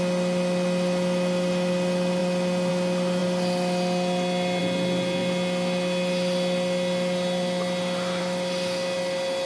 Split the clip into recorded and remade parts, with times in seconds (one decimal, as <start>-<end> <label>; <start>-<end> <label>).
0.0-9.5 recorded